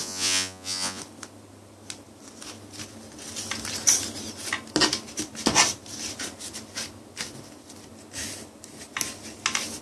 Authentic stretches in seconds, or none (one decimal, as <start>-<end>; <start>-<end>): 1.0-9.8